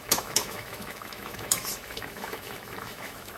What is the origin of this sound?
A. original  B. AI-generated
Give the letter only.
B